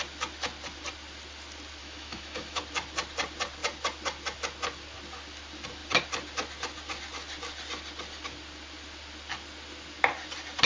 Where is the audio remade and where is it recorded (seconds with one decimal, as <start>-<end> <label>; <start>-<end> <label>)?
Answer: 0.0-1.8 recorded; 1.8-2.6 remade; 2.6-10.7 recorded